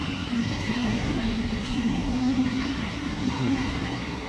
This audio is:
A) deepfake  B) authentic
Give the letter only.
A